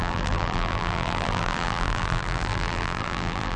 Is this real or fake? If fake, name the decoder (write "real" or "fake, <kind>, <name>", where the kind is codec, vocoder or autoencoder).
fake, vocoder, BigVGAN v2